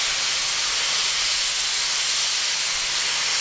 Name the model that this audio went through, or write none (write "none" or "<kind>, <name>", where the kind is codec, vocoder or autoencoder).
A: none